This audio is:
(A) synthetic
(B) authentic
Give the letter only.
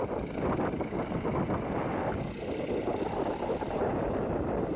B